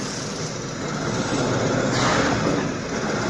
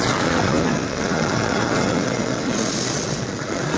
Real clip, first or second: first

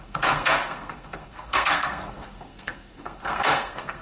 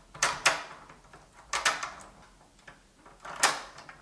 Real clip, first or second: second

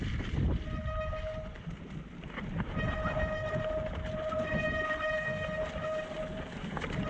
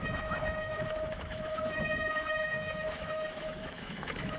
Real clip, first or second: first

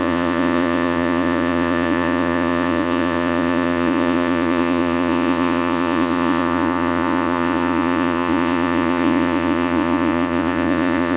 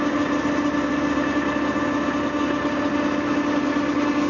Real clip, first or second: second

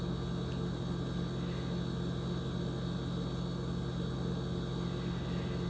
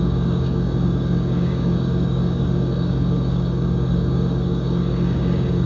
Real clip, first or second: first